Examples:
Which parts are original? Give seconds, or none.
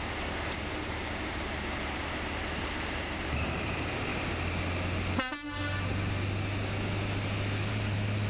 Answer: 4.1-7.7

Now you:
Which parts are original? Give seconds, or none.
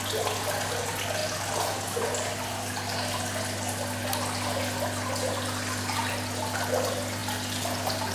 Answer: 0.0-8.1